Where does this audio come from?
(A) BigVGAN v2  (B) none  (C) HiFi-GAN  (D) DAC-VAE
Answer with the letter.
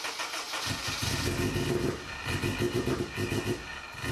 B